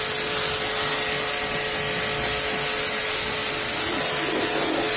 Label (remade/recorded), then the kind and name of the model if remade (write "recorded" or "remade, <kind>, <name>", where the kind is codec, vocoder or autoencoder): recorded